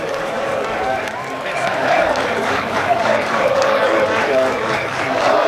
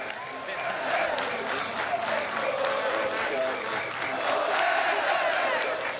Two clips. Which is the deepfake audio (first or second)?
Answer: first